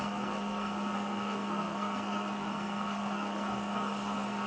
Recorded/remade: remade